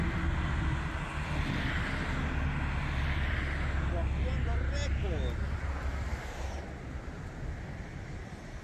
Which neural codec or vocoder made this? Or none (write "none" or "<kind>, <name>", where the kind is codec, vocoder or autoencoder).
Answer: none